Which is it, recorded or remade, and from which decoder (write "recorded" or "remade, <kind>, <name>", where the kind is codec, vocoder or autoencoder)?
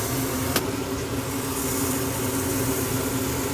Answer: recorded